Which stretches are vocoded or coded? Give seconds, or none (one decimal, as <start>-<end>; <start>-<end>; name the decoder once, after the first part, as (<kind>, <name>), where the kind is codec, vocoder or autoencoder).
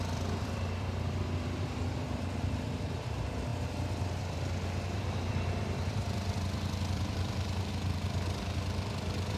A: 0.0-9.4 (vocoder, BigVGAN v2)